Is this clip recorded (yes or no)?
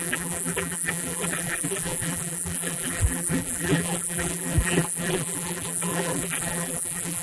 no